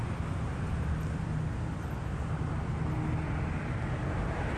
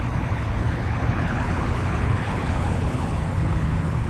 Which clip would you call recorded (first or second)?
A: first